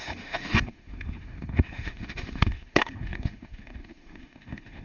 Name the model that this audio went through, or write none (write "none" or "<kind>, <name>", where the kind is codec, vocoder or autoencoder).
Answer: autoencoder, DAC-VAE